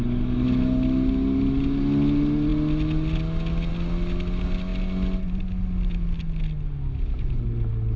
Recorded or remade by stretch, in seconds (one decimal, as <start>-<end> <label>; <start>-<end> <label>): 0.0-8.0 recorded